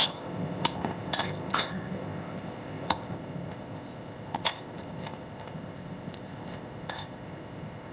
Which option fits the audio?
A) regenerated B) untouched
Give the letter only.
A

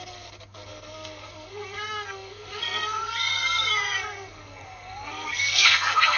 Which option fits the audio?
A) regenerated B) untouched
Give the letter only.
A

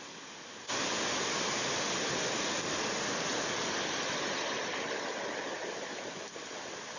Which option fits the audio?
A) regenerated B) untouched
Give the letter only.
B